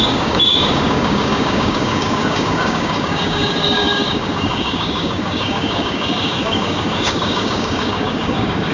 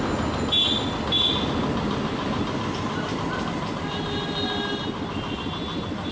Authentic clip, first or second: second